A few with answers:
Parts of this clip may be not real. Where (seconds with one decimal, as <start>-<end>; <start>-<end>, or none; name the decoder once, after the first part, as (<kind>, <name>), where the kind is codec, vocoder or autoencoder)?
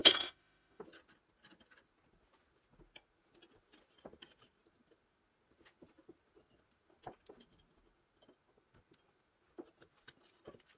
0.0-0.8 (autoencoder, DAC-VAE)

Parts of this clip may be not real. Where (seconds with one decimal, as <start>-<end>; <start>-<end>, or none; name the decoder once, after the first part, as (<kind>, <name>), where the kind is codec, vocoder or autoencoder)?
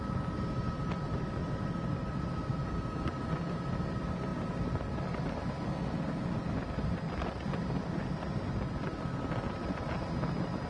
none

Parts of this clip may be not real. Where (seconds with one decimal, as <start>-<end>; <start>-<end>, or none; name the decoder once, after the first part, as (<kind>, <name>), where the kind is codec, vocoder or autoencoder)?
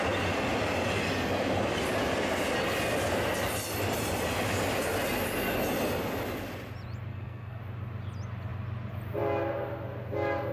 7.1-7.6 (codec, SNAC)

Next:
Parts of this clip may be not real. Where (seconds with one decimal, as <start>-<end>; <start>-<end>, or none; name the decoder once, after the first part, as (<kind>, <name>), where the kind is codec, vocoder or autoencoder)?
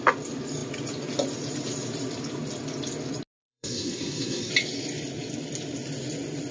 3.4-4.5 (codec, SNAC)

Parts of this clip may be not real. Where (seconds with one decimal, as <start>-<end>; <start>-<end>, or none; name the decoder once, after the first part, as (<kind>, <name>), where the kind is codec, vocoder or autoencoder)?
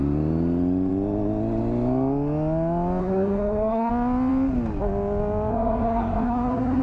3.0-3.9 (codec, SNAC); 5.5-6.8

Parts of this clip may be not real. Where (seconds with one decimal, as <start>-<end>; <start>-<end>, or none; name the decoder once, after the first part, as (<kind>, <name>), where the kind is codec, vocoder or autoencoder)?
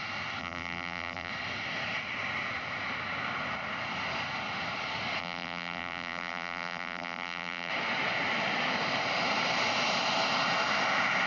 0.4-1.3 (vocoder, BigVGAN v2); 5.2-7.7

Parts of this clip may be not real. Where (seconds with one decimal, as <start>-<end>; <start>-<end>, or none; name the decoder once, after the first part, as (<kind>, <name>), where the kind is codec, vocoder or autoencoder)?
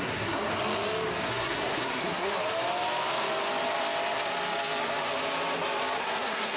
0.0-0.5 (codec, SNAC); 1.3-2.4; 6.0-6.6